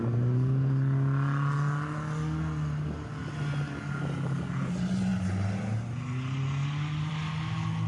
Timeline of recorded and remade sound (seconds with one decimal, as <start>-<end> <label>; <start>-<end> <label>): 0.0-7.9 recorded